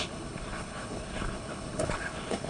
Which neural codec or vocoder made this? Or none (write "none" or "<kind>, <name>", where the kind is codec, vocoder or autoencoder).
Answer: codec, HILCodec